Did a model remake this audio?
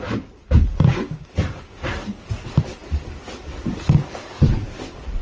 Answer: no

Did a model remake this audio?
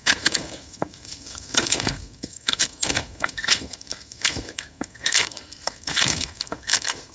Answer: yes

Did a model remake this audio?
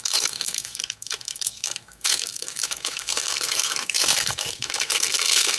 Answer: yes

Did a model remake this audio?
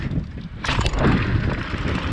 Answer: no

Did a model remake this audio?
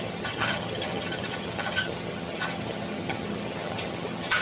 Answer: yes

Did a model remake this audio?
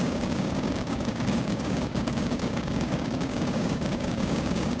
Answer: yes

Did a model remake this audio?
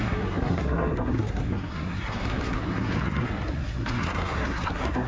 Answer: yes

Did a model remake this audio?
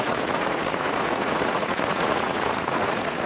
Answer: yes